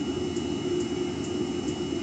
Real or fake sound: real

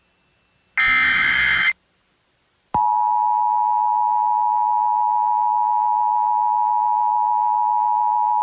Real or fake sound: real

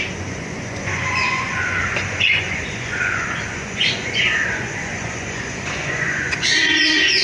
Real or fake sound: fake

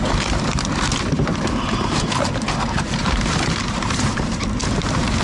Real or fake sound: fake